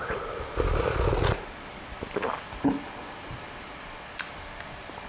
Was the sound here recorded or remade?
recorded